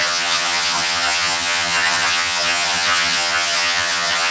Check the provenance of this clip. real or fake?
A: fake